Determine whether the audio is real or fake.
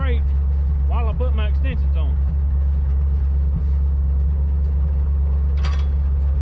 real